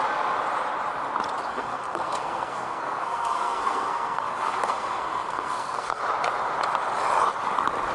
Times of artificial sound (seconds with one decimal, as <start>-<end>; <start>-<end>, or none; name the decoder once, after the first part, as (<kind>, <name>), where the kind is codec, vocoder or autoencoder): 1.5-6.0 (codec, SNAC)